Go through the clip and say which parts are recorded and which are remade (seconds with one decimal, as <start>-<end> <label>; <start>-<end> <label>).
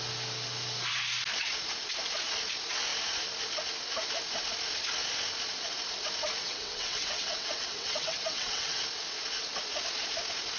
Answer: 0.0-6.4 recorded; 6.4-8.8 remade; 8.8-10.6 recorded